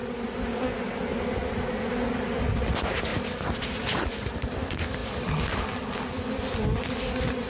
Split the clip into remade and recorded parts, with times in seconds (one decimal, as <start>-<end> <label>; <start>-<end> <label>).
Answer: 0.0-7.5 recorded